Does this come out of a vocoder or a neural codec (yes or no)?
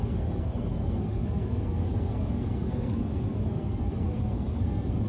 yes